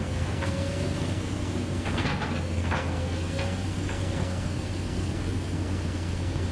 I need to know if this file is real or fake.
fake